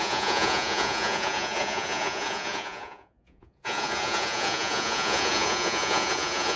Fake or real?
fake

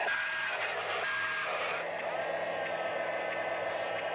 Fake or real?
real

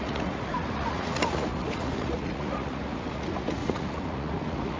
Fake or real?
fake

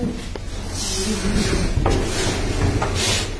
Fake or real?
real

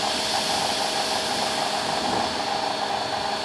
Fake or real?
real